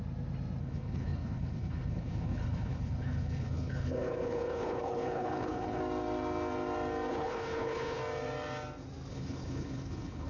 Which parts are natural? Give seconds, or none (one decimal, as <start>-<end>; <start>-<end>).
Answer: 0.0-0.6; 5.8-7.1; 8.0-9.1

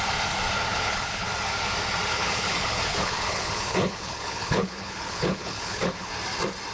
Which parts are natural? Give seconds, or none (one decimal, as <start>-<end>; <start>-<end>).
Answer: 0.0-0.7; 1.3-2.1; 6.1-6.7